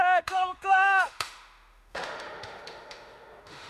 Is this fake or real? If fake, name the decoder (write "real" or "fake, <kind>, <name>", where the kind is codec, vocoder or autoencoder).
fake, autoencoder, DAC-VAE